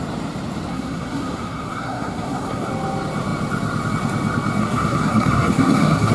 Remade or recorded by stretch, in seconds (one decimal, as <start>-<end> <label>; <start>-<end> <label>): 0.0-0.7 recorded; 0.7-2.7 remade; 2.7-4.6 recorded; 4.6-6.1 remade